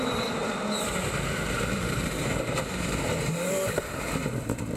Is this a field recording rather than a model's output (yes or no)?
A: no